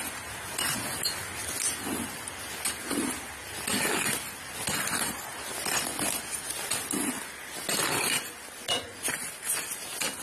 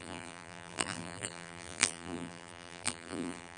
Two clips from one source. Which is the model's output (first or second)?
second